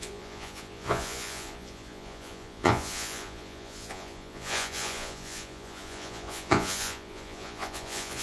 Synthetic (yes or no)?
yes